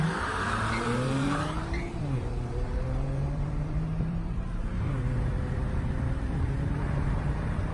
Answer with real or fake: fake